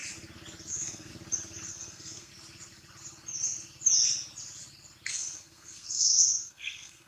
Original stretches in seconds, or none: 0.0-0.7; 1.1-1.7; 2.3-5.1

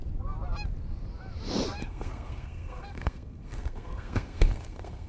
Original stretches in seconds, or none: 0.0-1.8

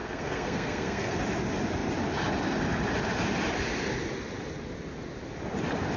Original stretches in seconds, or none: 1.2-6.0

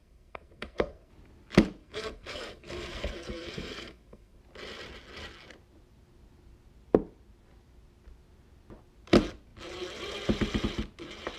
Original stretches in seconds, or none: 1.1-1.8; 4.4-11.4

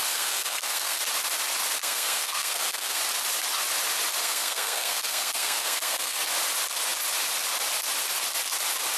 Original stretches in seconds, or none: 1.0-1.8; 3.0-4.2; 6.2-9.0

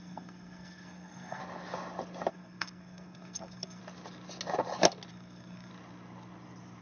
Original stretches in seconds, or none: 1.4-2.3; 3.8-5.1; 5.7-6.8

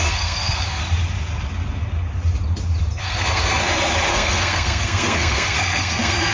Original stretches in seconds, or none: 0.8-3.0; 3.6-4.1